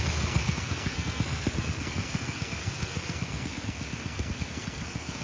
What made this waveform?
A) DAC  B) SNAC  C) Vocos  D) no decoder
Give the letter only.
B